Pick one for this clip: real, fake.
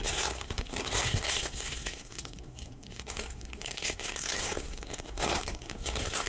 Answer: fake